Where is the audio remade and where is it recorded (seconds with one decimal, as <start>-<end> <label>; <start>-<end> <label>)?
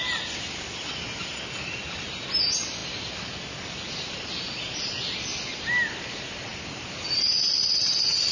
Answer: 0.0-8.3 recorded